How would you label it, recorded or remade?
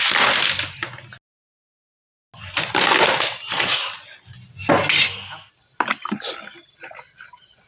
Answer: recorded